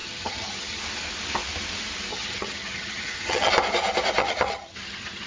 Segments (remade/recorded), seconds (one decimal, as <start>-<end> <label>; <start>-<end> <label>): 0.0-0.8 remade; 0.8-2.1 recorded; 2.1-3.5 remade; 3.5-4.2 recorded; 4.2-5.3 remade

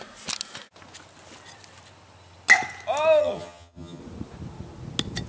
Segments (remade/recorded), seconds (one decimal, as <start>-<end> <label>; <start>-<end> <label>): 0.0-3.2 recorded; 3.2-4.0 remade; 4.0-5.3 recorded

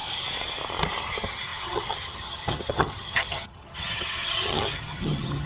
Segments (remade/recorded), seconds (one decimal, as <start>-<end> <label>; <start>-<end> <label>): 0.0-1.0 recorded; 1.0-5.5 remade

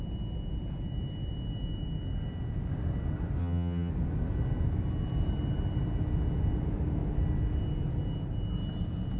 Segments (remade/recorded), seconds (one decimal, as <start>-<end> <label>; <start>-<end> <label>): 0.0-3.4 recorded; 3.4-3.9 remade; 3.9-9.2 recorded

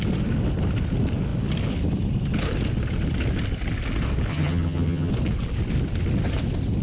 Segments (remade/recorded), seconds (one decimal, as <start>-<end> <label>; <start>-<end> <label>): 0.0-4.3 recorded; 4.3-5.1 remade; 5.1-6.8 recorded